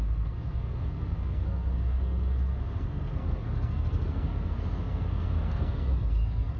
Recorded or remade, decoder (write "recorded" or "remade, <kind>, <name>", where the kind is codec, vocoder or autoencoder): remade, codec, SNAC